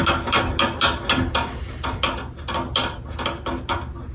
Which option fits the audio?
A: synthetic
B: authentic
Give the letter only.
B